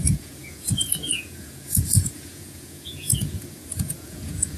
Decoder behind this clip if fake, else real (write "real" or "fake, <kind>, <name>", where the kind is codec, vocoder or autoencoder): fake, vocoder, Vocos